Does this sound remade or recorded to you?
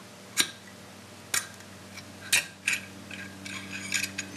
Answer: recorded